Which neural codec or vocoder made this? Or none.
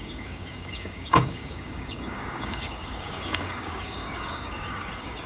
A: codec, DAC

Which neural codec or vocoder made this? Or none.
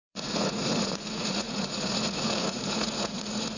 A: vocoder, Vocos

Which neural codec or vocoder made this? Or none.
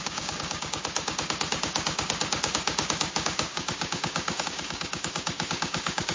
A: codec, DAC